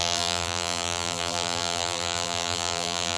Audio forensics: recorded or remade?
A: remade